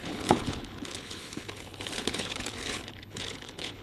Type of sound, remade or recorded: remade